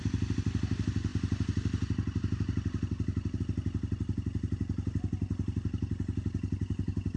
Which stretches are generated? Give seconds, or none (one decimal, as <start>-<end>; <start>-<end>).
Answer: none